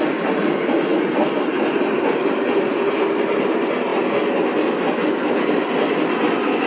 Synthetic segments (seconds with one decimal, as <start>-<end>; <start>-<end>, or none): none